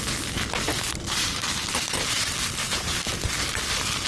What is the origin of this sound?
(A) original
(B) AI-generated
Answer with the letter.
A